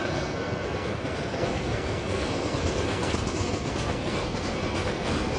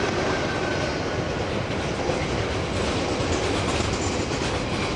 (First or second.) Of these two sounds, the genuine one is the second